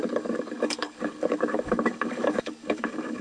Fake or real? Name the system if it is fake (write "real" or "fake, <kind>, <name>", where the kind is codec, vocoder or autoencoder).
fake, codec, DAC